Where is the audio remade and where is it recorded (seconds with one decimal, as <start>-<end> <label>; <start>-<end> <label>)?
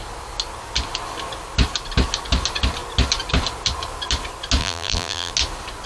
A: 0.0-4.6 recorded; 4.6-5.3 remade; 5.3-5.9 recorded